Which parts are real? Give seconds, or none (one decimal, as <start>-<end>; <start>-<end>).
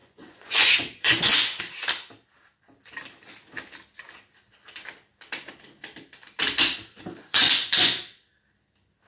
1.6-7.2; 8.0-9.1